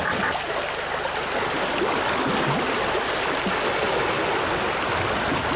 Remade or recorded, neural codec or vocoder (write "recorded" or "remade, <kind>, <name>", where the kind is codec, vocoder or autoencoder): recorded